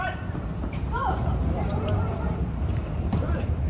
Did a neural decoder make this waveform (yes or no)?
yes